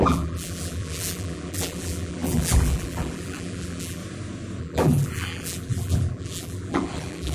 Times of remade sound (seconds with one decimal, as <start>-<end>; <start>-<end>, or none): 0.0-4.0; 4.6-7.3

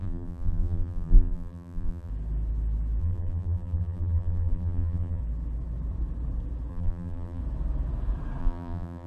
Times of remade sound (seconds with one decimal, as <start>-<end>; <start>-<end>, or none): 0.0-2.1; 3.0-5.2; 6.7-7.4; 8.4-9.1

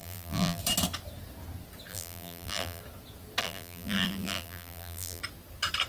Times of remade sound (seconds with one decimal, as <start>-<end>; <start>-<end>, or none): 0.0-0.6; 1.9-2.8; 3.4-5.2